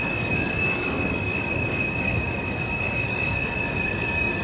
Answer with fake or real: fake